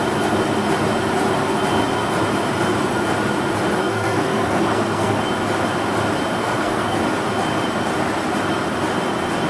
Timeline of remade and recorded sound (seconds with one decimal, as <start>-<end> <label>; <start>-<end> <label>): 0.0-3.8 recorded; 3.8-5.2 remade; 5.2-6.4 recorded; 6.4-7.0 remade; 7.0-9.5 recorded